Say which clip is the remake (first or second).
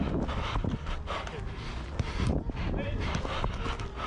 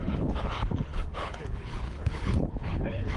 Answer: second